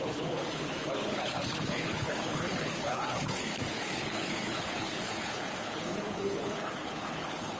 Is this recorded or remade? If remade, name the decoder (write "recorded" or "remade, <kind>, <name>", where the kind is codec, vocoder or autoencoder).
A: remade, codec, HILCodec